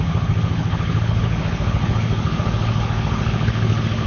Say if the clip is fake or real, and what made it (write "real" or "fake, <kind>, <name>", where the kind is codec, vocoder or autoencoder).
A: fake, codec, HILCodec